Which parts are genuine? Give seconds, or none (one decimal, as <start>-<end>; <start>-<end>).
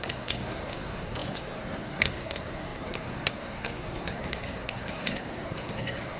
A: none